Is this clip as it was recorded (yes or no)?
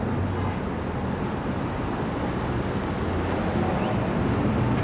yes